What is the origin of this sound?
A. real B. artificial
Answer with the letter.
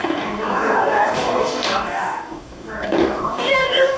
B